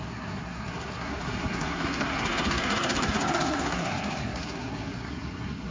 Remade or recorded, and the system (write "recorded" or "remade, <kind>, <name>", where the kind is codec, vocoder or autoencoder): remade, codec, SNAC